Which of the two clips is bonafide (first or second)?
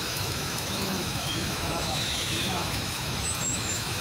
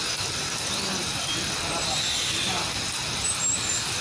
second